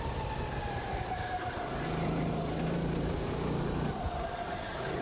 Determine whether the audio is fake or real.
real